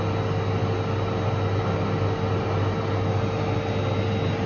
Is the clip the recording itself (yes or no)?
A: yes